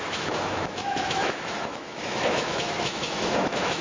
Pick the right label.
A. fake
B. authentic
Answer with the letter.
A